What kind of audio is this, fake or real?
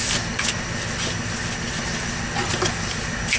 real